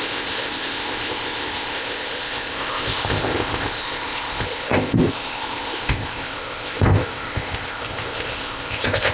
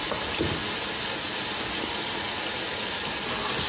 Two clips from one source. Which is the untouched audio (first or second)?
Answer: second